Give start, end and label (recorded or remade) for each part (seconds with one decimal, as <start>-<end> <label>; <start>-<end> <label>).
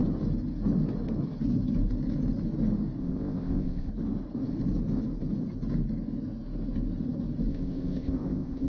0.0-3.0 recorded; 3.0-3.9 remade; 3.9-7.5 recorded; 7.5-8.7 remade